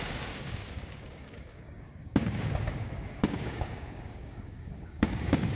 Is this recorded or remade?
remade